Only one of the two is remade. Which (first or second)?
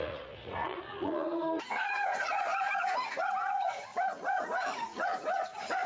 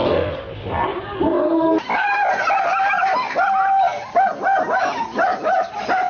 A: first